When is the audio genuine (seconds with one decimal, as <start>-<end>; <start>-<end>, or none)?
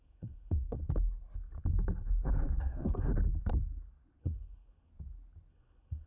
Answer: 0.8-2.6; 3.1-4.2; 4.9-5.5